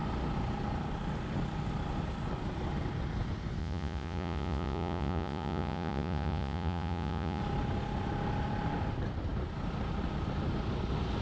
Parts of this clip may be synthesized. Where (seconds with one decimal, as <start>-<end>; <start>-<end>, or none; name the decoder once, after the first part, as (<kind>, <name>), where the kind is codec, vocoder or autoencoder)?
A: 3.6-7.4 (vocoder, Vocos)